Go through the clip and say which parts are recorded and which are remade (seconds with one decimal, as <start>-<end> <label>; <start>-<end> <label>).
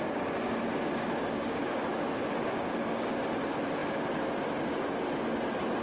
0.0-0.7 recorded; 0.7-3.2 remade; 3.2-5.8 recorded